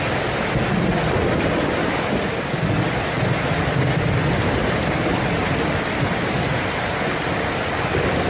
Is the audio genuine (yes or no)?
yes